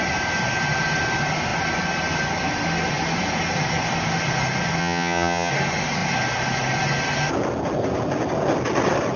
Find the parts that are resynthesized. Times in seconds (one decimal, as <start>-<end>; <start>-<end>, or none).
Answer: 4.8-5.5